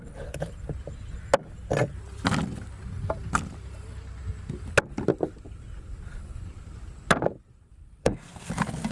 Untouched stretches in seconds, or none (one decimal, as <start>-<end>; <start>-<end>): 0.0-8.0; 8.5-8.9